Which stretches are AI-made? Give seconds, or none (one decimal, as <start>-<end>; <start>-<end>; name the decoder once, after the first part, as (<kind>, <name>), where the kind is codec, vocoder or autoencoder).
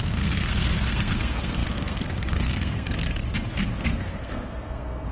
0.0-3.2 (codec, SNAC); 3.8-5.1